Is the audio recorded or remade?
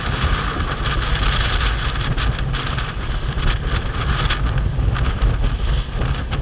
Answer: recorded